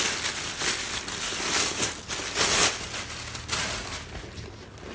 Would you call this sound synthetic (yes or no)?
no